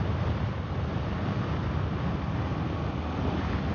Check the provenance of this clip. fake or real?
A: real